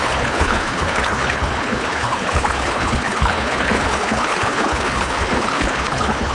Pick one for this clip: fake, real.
fake